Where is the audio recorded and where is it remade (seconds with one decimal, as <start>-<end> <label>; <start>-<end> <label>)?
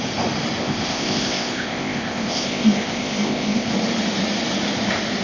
0.0-0.6 recorded; 0.6-3.7 remade; 3.7-5.2 recorded